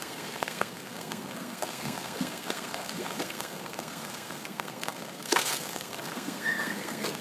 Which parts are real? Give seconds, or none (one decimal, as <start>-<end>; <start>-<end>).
none